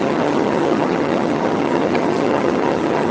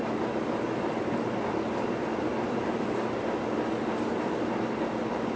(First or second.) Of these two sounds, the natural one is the second